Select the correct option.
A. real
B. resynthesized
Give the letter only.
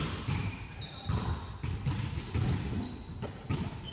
A